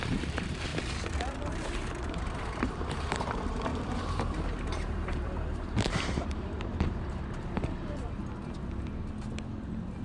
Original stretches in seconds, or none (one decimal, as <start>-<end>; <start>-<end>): 0.7-2.1; 8.2-10.0